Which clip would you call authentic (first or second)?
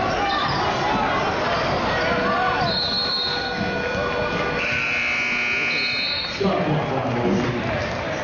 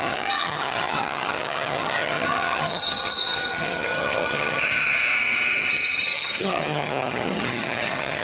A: first